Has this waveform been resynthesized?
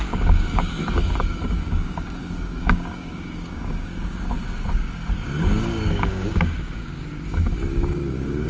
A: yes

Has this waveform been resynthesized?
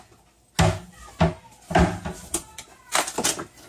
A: no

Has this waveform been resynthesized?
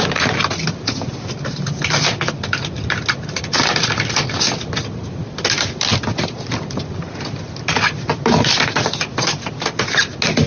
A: no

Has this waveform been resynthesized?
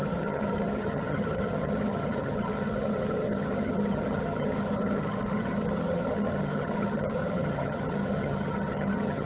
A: yes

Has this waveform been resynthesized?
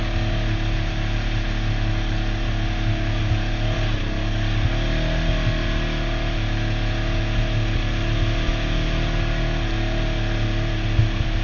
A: no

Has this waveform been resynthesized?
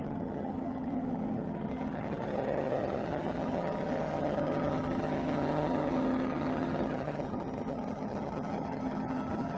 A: yes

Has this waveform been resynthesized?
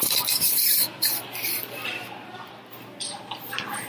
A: no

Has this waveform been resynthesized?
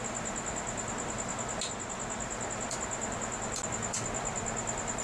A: no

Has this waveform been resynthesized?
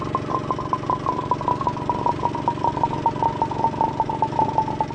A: no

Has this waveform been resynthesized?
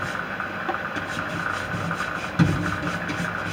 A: no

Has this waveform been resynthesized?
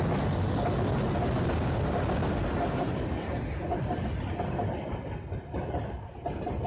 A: no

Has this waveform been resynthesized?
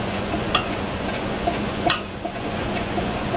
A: yes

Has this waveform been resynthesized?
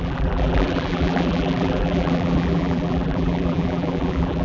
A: yes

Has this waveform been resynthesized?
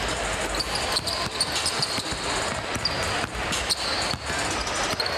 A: no